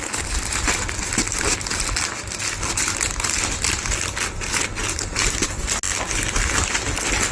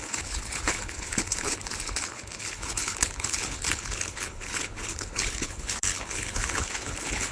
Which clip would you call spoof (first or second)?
second